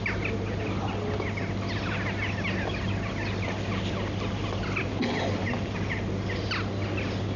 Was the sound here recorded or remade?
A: recorded